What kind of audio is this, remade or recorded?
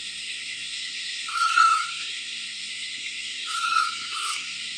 remade